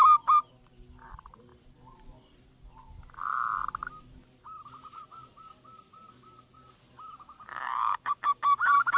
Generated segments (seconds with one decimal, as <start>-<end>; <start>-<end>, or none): 7.8-9.0